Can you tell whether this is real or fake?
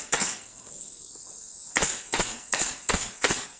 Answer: fake